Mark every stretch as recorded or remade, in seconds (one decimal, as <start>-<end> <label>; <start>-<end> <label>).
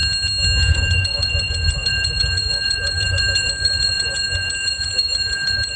0.0-0.7 recorded; 0.7-5.8 remade